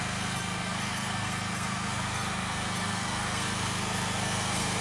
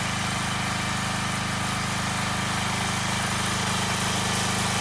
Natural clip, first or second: second